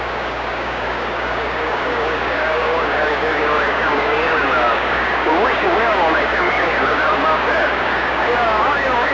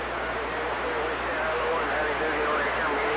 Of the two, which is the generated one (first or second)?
first